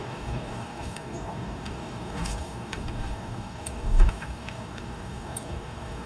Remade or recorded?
remade